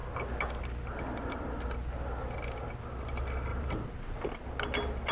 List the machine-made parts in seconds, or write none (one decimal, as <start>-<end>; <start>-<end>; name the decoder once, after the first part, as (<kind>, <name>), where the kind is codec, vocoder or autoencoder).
3.5-4.1 (vocoder, BigVGAN v2)

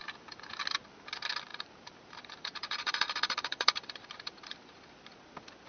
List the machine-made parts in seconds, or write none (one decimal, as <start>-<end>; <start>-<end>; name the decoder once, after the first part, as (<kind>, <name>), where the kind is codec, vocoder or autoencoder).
0.0-0.6 (vocoder, BigVGAN v2); 1.5-4.9

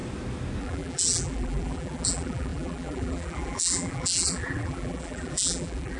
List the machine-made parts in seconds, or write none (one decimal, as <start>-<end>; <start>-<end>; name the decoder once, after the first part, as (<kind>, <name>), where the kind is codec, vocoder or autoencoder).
0.6-6.0 (vocoder, BigVGAN v2)

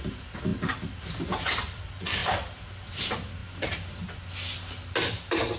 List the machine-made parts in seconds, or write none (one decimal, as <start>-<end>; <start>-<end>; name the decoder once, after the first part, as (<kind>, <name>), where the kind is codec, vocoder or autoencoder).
none

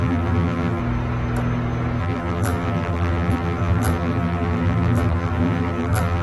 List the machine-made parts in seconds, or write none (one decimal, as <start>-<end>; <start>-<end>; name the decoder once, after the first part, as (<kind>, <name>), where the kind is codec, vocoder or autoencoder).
0.0-0.8 (vocoder, BigVGAN v2); 2.0-6.2